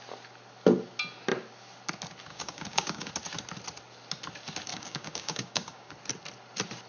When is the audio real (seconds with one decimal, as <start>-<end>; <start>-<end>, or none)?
0.0-2.3; 3.1-4.7; 5.9-6.9